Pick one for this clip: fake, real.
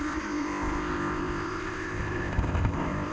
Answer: fake